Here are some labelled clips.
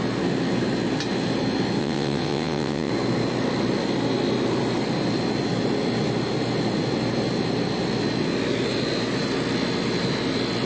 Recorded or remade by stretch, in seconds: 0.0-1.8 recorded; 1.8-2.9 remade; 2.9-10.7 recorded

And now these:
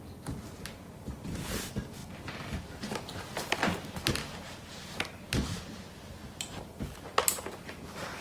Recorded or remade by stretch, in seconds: 0.0-8.2 recorded

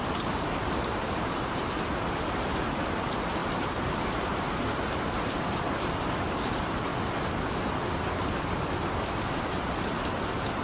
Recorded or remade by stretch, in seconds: 0.0-3.4 remade; 3.4-5.2 recorded; 5.2-6.9 remade; 6.9-9.2 recorded; 9.2-10.6 remade

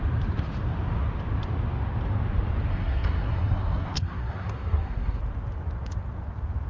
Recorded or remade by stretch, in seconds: 0.0-2.7 recorded; 2.7-5.2 remade; 5.2-6.7 recorded

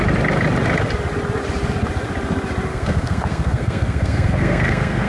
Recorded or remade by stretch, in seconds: 0.0-2.7 recorded; 2.7-5.1 remade

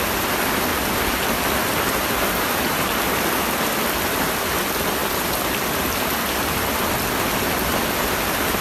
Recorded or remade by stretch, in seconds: 0.0-8.6 recorded

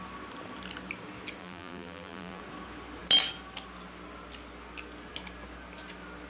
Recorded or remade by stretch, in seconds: 0.0-1.4 recorded; 1.4-2.4 remade; 2.4-6.3 recorded

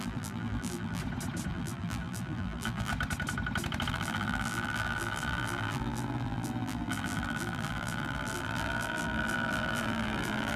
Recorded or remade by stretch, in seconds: 0.0-1.0 remade; 1.0-1.5 recorded; 1.5-2.9 remade; 2.9-3.9 recorded; 3.9-10.6 remade